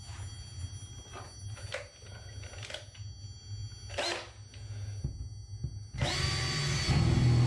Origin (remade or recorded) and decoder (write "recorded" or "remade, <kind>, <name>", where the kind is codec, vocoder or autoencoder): recorded